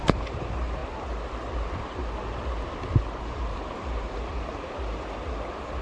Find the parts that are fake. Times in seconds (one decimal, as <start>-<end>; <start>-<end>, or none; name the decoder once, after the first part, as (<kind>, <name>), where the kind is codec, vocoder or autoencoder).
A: 0.0-0.8 (vocoder, BigVGAN v2); 3.2-5.8